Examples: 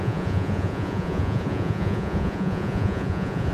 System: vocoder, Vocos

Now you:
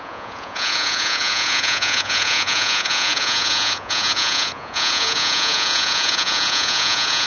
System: vocoder, Vocos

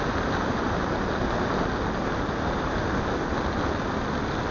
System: none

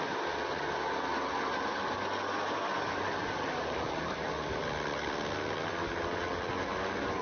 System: none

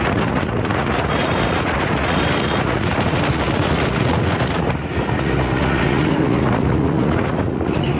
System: vocoder, Vocos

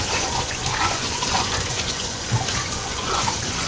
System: vocoder, Vocos